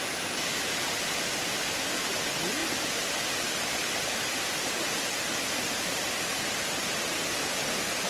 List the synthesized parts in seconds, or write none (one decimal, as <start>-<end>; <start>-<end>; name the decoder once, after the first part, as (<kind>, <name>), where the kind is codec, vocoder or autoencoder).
none